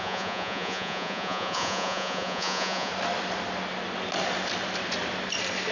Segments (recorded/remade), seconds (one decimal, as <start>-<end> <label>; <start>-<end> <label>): 0.0-2.9 remade; 2.9-5.7 recorded